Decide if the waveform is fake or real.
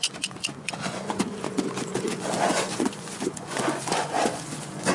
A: fake